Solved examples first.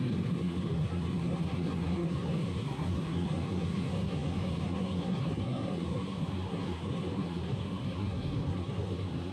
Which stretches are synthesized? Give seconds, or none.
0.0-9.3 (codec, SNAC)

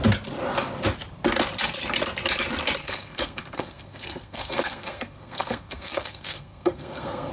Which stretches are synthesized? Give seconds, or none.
2.8-7.3 (codec, SNAC)

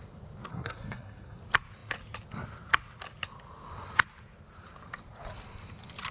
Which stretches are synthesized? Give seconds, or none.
0.5-1.4 (codec, SNAC)

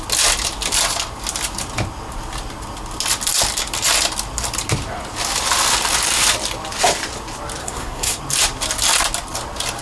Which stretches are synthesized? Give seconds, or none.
7.6-8.2 (codec, SNAC)

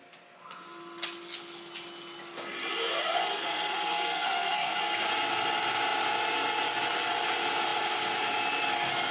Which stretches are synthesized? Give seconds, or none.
3.3-4.8 (codec, SNAC)

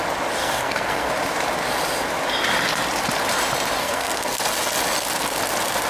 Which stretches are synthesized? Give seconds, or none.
0.4-1.1 (codec, SNAC); 3.8-4.4

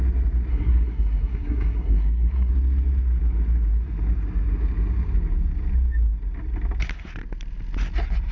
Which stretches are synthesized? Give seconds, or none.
0.5-2.5 (codec, SNAC)